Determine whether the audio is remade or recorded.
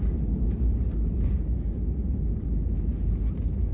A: recorded